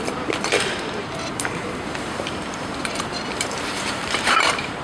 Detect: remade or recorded remade